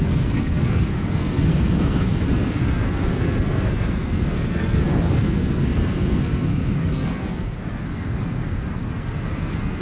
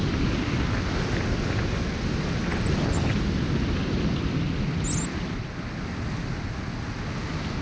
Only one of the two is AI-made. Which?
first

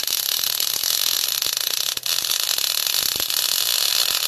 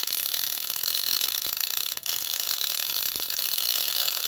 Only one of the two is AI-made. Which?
second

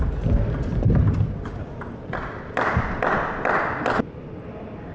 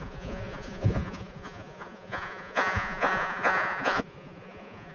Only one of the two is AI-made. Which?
second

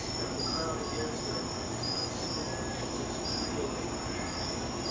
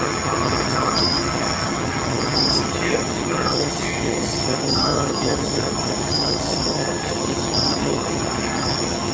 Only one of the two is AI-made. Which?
second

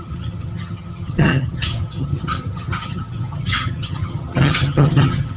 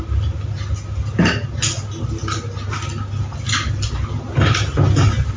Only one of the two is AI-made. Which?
first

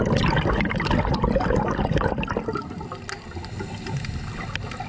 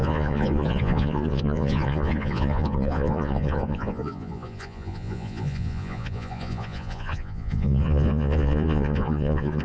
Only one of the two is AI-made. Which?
second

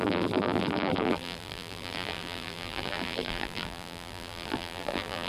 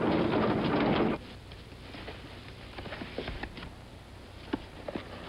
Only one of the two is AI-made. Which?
first